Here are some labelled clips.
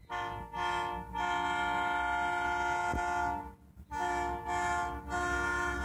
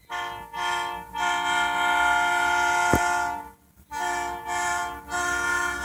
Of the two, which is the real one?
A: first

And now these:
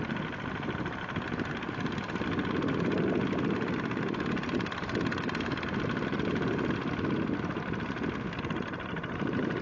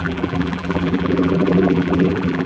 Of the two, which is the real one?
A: first